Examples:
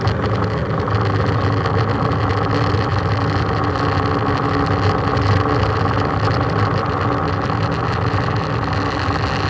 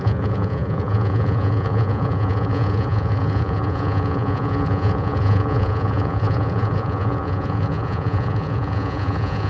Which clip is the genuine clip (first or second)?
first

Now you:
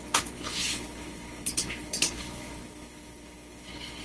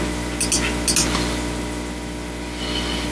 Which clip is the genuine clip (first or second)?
second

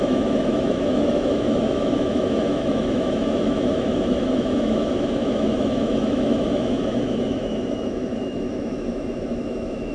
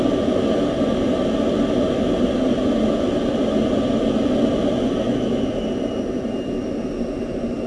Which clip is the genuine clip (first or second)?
second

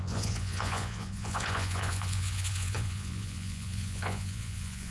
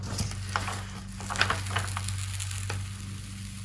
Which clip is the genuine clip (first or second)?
second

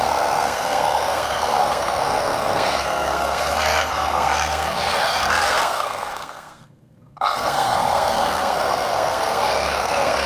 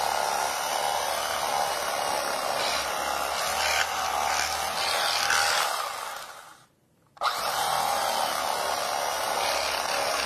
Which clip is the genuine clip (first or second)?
second